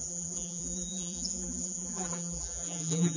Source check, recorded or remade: remade